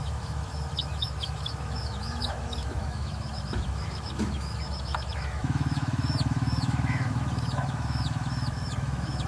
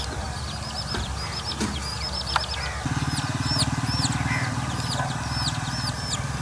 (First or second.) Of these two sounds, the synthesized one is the first